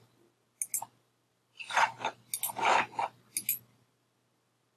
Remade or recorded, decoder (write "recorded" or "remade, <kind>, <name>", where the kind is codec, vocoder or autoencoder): recorded